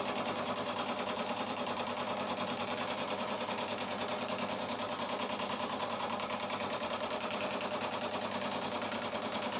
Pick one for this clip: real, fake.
fake